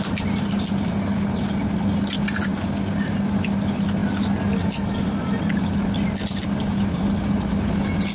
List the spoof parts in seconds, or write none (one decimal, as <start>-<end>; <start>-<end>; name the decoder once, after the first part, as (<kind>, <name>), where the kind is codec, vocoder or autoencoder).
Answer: none